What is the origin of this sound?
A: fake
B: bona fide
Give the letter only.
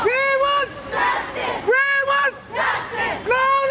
B